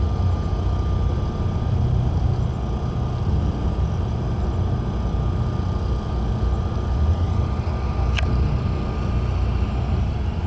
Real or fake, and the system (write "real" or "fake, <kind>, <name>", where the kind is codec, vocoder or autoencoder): real